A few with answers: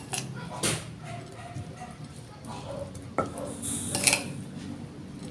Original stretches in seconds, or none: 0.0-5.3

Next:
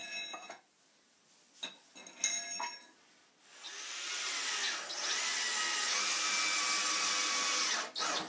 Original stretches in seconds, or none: 0.6-8.3

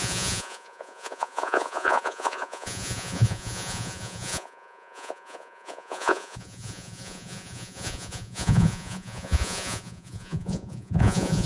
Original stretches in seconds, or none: none

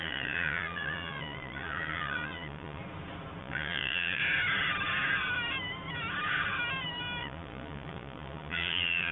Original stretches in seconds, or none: 2.8-3.4; 4.2-7.2

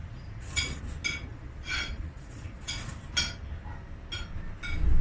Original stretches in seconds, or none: 0.8-1.3; 2.9-5.0